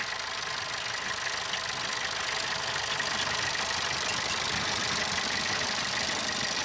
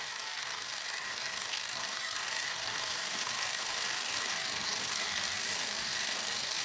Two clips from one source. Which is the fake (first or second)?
second